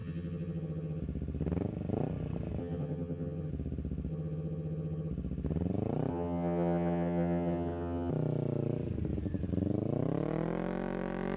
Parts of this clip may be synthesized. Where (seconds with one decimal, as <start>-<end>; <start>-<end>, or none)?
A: 0.0-1.0; 2.6-3.5; 4.1-5.1; 6.1-8.1